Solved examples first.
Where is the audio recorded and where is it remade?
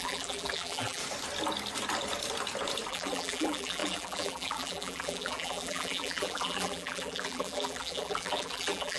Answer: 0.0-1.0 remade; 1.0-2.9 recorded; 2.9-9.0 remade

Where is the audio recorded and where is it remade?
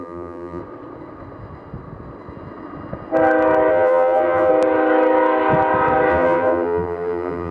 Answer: 0.0-0.6 remade; 0.6-3.7 recorded; 3.7-4.5 remade; 4.5-6.1 recorded; 6.1-7.5 remade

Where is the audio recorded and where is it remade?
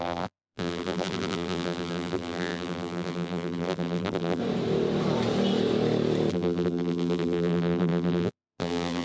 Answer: 0.0-4.4 remade; 4.4-6.3 recorded; 6.3-9.0 remade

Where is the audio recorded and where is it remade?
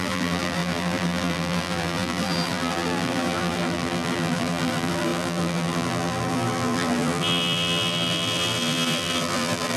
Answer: 0.0-9.8 remade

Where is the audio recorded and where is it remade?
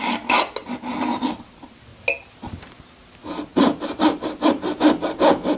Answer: 0.0-3.5 recorded; 3.5-4.8 remade; 4.8-5.6 recorded